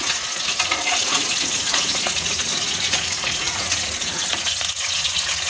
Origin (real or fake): fake